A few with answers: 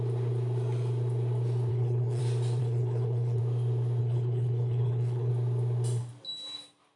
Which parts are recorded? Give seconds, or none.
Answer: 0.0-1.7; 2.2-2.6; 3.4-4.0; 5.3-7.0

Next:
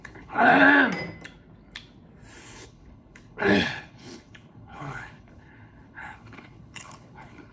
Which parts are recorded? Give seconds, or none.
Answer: 0.5-2.4

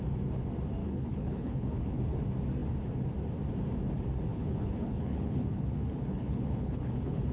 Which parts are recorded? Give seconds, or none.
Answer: 0.0-0.8; 2.2-4.3

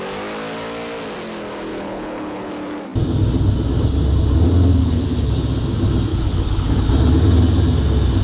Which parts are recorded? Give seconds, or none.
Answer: 0.0-1.7; 2.5-4.8; 5.3-6.1; 6.8-8.2

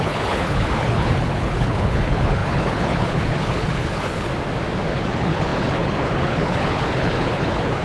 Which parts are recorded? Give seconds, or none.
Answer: 4.3-4.9